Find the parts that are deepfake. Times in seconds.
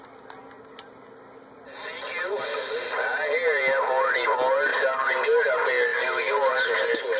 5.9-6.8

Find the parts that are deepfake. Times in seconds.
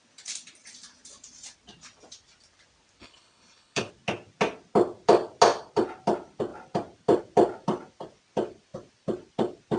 3.0-3.9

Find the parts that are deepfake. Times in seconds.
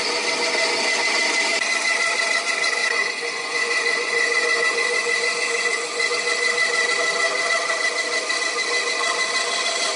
2.8-6.1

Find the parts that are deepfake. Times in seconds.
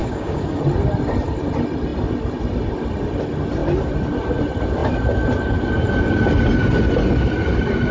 0.0-0.6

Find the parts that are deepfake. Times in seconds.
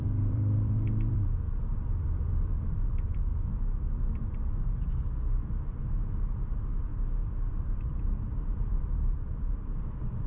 0.0-3.3; 6.4-6.9; 7.5-10.3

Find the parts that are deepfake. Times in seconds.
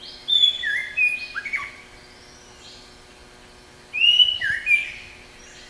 0.8-1.4